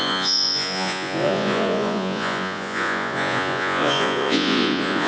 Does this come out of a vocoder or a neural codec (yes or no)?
yes